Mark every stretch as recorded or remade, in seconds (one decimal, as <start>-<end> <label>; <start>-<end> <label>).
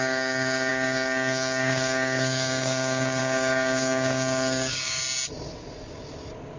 0.0-5.0 remade; 5.0-6.6 recorded